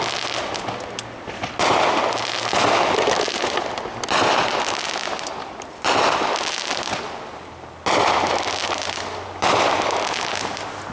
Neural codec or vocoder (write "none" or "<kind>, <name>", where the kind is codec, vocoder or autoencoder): none